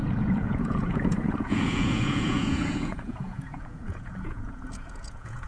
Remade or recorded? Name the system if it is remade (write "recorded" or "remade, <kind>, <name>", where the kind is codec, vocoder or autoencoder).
remade, vocoder, Vocos